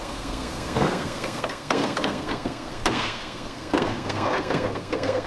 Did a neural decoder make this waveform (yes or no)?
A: yes